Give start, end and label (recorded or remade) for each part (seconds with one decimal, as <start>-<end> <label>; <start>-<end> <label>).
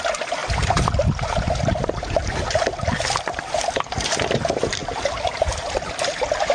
0.0-6.5 recorded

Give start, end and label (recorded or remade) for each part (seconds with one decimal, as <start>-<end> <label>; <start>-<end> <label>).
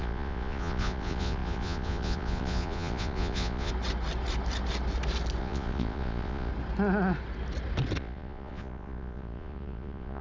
0.0-3.7 remade; 3.7-5.4 recorded; 5.4-6.5 remade; 6.5-8.0 recorded; 8.0-10.2 remade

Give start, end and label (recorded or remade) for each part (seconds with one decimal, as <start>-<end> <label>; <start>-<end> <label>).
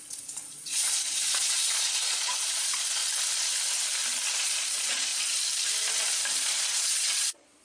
0.0-3.0 remade; 3.0-4.3 recorded; 4.3-5.1 remade; 5.1-6.4 recorded; 6.4-7.6 remade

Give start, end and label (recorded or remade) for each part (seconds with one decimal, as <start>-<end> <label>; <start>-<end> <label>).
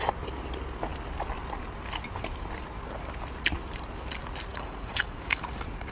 0.0-4.5 recorded; 4.5-5.4 remade; 5.4-5.9 recorded